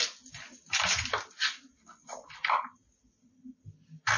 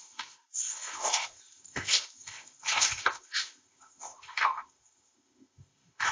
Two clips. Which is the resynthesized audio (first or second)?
second